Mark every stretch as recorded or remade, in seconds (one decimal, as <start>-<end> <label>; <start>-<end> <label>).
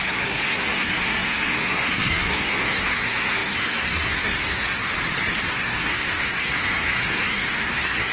0.0-4.9 remade; 4.9-5.5 recorded; 5.5-8.1 remade